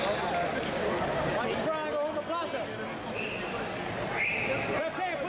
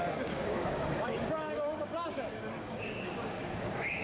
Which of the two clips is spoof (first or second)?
second